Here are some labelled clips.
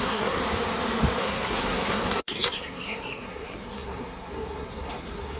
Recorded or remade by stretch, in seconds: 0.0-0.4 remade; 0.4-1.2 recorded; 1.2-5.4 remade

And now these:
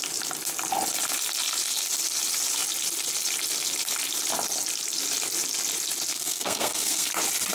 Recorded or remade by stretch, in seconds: 0.0-6.1 recorded; 6.1-7.1 remade; 7.1-7.5 recorded

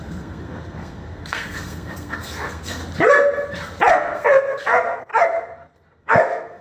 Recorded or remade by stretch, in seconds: 0.0-2.8 remade; 2.8-3.9 recorded; 3.9-5.1 remade; 5.1-6.0 recorded; 6.0-6.6 remade